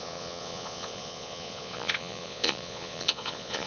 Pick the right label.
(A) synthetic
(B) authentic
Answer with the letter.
A